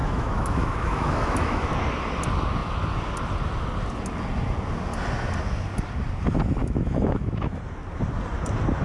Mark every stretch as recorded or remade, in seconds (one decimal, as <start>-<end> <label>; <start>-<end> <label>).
0.0-1.7 remade; 1.7-6.6 recorded; 6.6-7.6 remade; 7.6-8.8 recorded